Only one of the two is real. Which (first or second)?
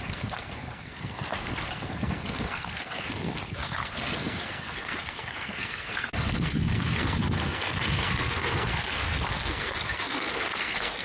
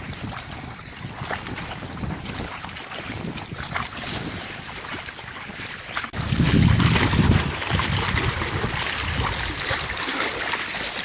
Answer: second